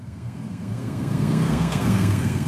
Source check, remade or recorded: remade